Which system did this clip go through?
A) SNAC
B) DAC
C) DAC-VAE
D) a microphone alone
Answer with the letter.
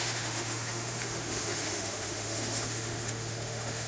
C